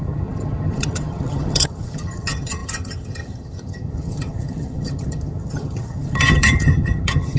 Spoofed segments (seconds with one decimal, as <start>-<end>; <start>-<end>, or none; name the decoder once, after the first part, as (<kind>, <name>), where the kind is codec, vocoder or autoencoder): 0.0-7.4 (vocoder, HiFi-GAN)